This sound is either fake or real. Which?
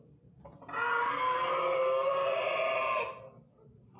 real